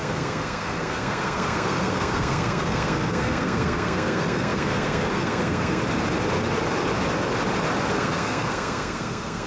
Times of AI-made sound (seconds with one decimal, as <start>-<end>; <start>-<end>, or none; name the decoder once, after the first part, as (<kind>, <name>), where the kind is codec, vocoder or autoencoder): 0.0-5.8 (codec, SNAC); 7.9-9.5

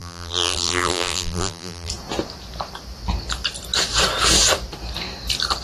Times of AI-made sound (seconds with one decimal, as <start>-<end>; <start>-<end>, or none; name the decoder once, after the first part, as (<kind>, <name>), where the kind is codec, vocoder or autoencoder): 0.0-1.9 (vocoder, BigVGAN v2)

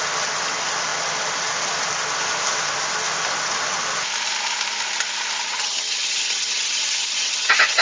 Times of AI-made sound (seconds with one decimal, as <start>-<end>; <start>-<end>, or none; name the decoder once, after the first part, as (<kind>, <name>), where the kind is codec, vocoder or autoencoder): 5.4-7.8 (vocoder, HiFi-GAN)